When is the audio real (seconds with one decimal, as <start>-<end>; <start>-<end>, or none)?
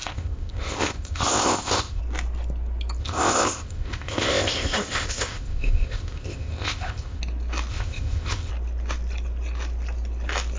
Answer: 2.0-3.0; 7.2-7.7; 8.5-10.6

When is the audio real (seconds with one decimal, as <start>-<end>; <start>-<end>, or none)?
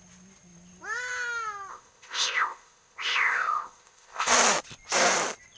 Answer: 0.0-1.7; 4.3-5.6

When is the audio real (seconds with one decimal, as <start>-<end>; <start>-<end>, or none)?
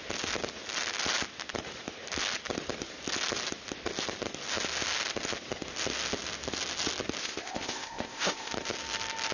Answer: 0.0-7.2; 8.5-9.3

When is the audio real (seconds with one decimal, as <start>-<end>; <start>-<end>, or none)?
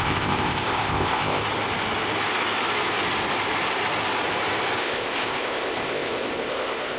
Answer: 1.4-4.8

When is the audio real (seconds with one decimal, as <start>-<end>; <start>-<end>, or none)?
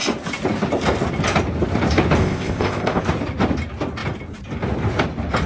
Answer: 0.0-2.2; 3.0-5.5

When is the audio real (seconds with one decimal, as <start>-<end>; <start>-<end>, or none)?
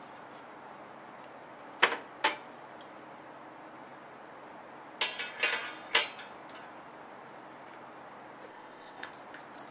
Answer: 0.0-8.5; 9.1-9.7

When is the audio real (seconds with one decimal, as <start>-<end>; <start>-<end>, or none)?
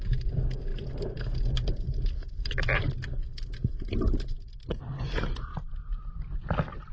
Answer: 0.0-6.9